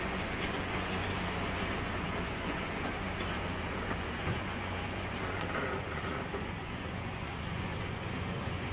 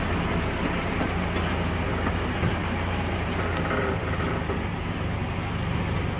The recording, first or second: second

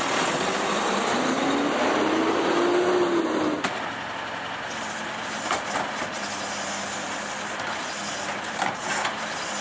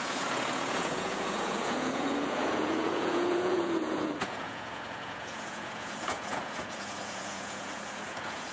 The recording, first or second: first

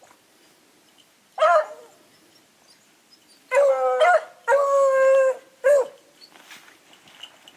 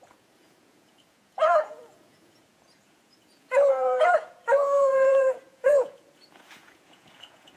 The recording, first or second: first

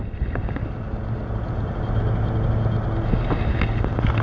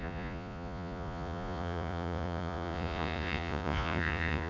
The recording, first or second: first